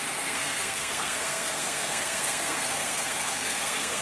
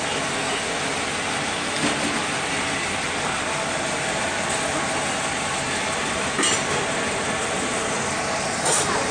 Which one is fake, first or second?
first